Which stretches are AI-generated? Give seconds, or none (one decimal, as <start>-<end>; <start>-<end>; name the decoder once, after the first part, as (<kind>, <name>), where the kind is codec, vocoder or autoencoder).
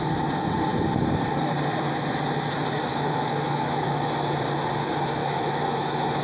2.9-4.1 (autoencoder, DAC-VAE); 5.2-6.2